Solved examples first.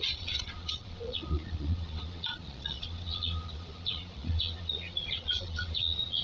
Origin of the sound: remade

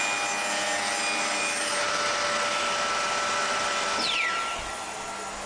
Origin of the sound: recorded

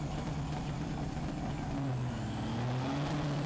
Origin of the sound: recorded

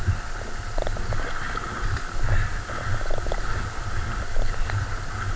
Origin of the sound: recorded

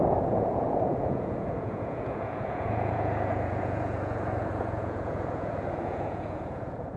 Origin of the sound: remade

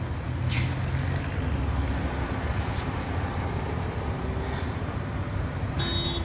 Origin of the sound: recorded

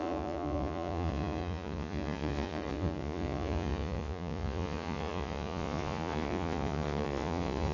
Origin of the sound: remade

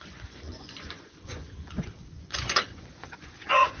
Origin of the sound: remade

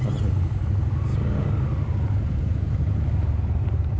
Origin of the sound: recorded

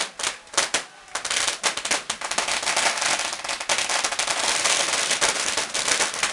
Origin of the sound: recorded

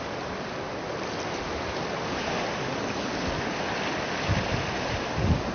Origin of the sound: recorded